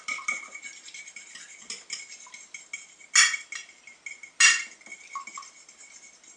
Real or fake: real